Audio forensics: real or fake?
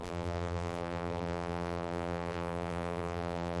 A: fake